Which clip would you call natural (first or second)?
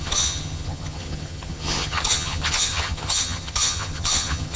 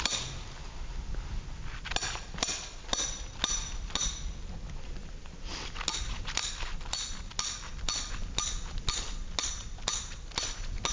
second